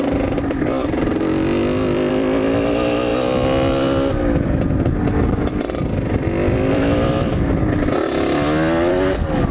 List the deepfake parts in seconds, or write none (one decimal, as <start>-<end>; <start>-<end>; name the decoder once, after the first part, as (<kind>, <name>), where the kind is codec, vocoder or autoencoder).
8.9-9.5 (codec, DAC)